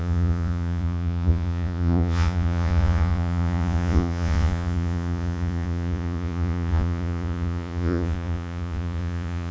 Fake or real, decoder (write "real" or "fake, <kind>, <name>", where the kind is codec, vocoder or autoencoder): fake, vocoder, Vocos